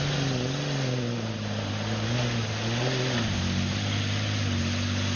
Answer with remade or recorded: recorded